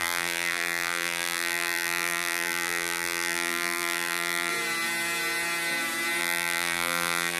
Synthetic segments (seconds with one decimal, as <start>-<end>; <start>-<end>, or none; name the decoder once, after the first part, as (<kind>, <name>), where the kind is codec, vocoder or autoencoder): 0.0-4.5 (vocoder, BigVGAN v2); 6.2-7.4